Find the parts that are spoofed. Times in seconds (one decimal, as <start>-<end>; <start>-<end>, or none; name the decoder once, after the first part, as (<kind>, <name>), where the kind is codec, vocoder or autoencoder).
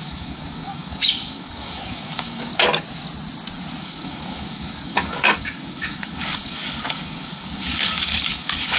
0.0-2.5 (codec, DAC); 3.8-8.8